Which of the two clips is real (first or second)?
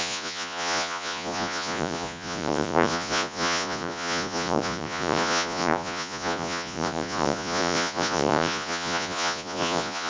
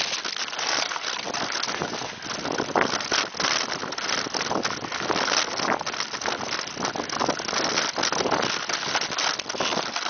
second